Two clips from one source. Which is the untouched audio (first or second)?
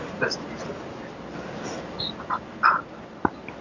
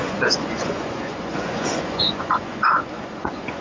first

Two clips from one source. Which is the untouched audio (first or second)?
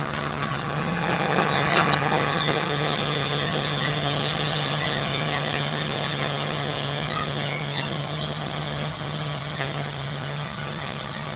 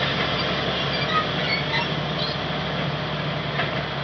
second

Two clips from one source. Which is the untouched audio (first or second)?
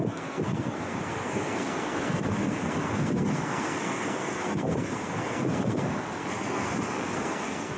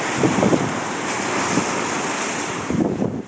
second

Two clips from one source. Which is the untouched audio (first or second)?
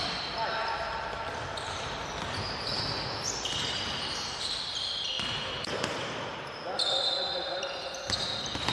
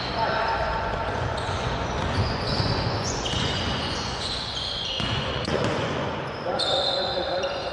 first